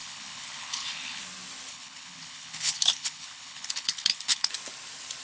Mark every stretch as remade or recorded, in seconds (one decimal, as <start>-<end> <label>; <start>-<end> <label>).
0.0-1.2 remade; 1.2-1.7 recorded; 1.7-4.5 remade; 4.5-5.2 recorded